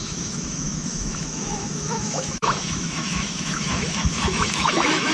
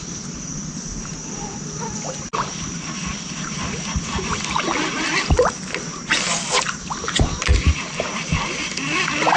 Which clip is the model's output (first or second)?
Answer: first